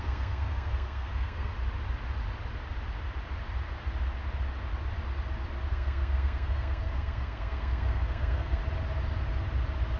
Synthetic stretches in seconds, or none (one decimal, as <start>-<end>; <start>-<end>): 0.0-1.5; 5.7-8.6